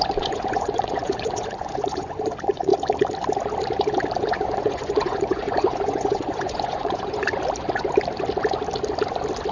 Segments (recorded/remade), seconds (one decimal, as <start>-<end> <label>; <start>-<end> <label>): 0.0-2.7 remade; 2.7-4.2 recorded; 4.2-7.3 remade; 7.3-9.5 recorded